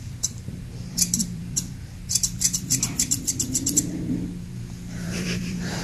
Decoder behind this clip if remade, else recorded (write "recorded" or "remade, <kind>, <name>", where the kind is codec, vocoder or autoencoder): remade, vocoder, BigVGAN v2